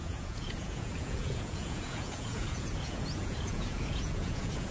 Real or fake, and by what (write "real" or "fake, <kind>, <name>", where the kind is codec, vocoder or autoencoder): fake, vocoder, Vocos